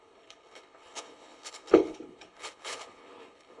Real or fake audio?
fake